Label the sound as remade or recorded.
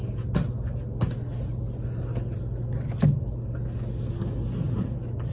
recorded